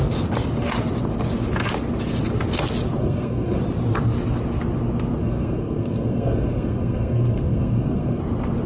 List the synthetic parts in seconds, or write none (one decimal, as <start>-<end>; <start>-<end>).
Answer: 3.0-3.6; 5.2-8.2